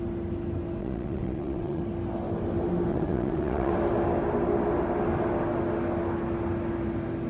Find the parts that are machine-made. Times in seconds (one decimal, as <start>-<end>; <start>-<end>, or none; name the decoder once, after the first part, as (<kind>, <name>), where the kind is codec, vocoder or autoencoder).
0.8-1.8 (vocoder, WaveNeXt); 2.9-3.7